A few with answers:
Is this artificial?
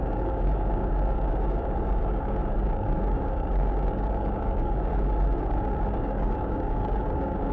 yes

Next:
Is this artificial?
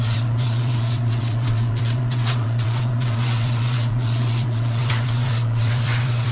yes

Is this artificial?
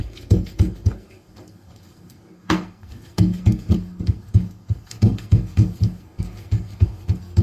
yes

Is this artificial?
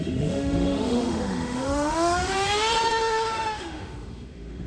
yes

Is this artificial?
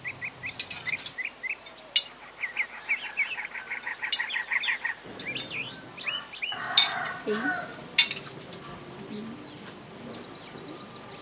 no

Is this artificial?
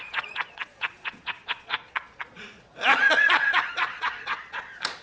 yes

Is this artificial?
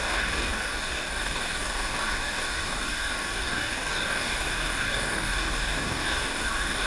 yes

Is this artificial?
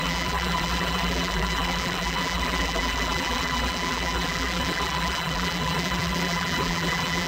yes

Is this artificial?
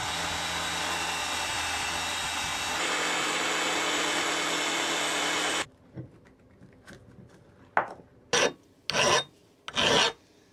no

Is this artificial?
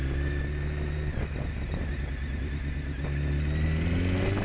no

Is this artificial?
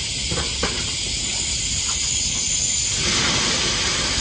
no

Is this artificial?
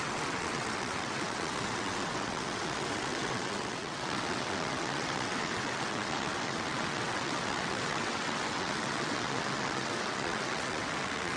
yes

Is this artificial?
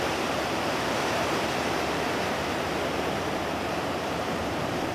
yes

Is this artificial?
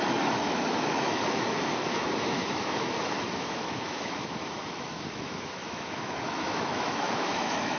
yes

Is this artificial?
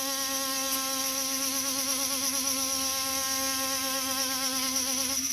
no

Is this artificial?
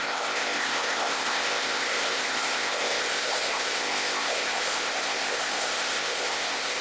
yes